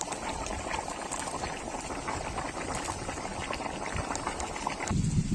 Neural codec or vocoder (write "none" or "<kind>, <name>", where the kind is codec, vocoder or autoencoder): none